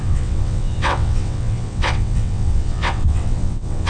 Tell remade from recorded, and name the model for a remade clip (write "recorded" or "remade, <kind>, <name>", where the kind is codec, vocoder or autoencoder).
remade, vocoder, WaveNeXt